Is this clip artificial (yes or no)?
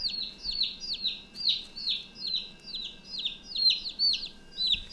no